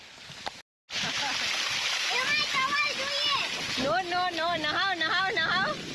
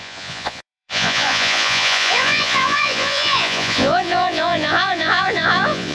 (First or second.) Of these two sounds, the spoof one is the second